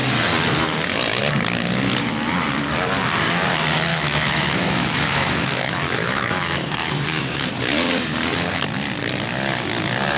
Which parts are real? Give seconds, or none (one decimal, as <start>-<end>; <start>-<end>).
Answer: 0.0-3.9; 7.5-10.2